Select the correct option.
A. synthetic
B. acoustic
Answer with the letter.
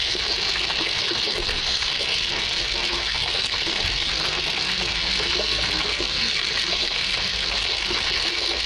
A